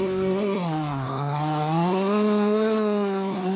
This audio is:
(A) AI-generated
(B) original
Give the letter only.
A